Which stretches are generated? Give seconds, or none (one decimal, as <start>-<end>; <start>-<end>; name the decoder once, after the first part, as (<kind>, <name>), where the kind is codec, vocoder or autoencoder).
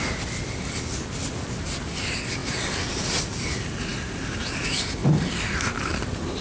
none